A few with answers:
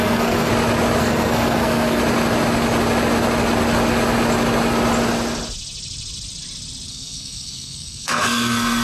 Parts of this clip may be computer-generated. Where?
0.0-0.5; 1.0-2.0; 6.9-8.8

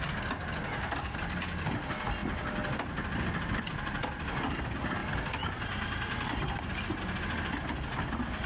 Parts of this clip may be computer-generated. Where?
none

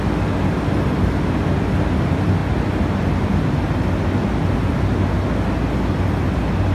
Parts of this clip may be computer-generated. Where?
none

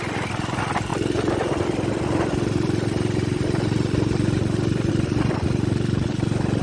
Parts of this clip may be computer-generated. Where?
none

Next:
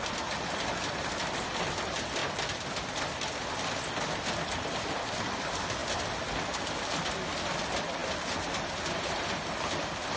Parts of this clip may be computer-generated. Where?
none

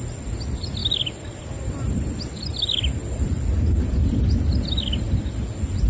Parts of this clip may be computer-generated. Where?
none

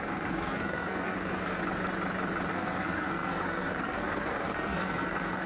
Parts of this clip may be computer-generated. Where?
0.0-1.6; 2.5-5.5

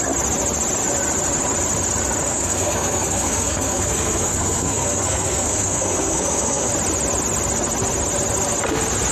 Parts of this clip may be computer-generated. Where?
2.3-6.7